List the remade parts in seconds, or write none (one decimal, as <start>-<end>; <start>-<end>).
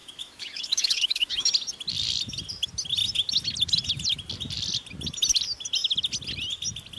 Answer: 0.0-1.5